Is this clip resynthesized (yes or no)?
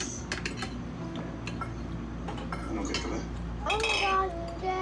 no